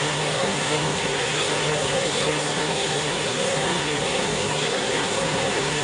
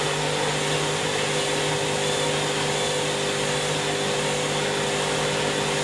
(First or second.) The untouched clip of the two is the second